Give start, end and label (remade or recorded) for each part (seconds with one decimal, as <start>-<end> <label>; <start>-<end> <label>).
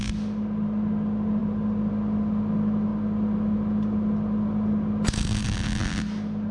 0.0-1.4 recorded; 1.4-1.9 remade; 1.9-6.5 recorded